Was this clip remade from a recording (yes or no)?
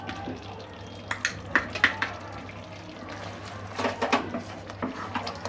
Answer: no